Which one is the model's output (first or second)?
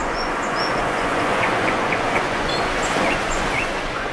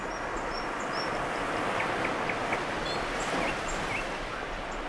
first